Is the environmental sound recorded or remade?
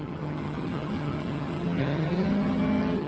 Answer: remade